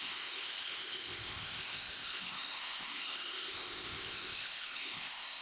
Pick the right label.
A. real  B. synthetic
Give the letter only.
B